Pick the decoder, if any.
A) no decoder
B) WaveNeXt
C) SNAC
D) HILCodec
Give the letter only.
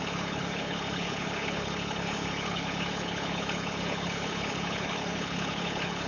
D